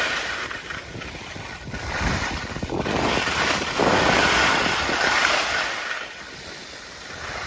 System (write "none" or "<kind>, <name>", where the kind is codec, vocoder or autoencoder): vocoder, BigVGAN v2